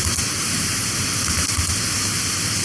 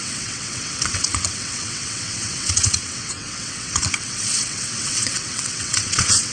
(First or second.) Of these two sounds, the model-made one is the second